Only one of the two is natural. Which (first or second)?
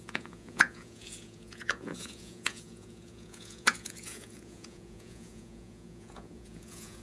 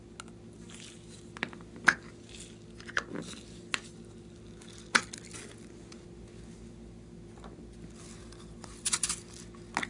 second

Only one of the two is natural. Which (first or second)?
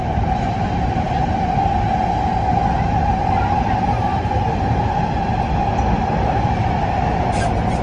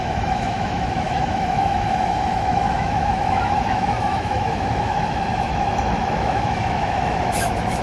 first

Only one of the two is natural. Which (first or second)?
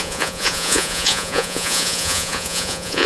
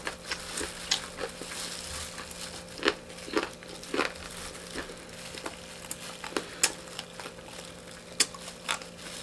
second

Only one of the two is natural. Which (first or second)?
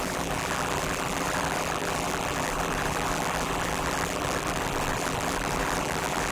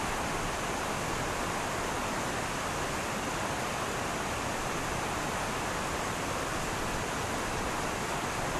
second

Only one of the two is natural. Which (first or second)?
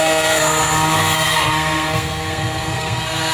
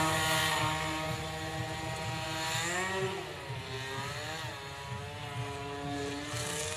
second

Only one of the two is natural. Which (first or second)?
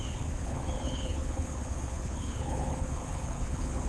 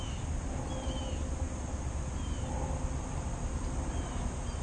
second